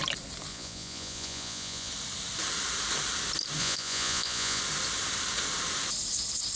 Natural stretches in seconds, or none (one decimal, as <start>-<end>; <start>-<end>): 0.0-0.5; 1.9-3.6; 4.6-6.6